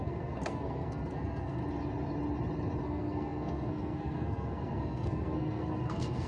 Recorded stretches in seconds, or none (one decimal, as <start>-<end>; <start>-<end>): 1.6-2.8